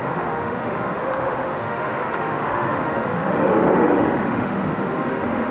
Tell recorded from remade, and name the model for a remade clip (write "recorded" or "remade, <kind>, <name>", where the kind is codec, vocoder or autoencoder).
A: remade, autoencoder, DAC-VAE